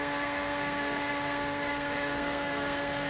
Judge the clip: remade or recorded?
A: remade